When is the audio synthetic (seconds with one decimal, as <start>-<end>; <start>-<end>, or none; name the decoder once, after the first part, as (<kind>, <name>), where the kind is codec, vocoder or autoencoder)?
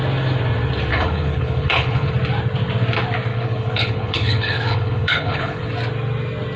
0.9-2.1 (codec, HILCodec); 3.3-5.7